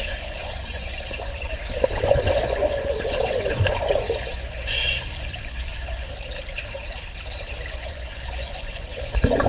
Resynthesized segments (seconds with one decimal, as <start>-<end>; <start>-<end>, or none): 0.0-6.1; 7.7-9.5